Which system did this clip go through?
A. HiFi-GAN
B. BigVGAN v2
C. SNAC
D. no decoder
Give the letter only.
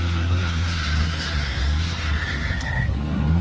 C